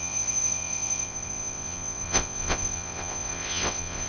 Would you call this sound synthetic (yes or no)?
yes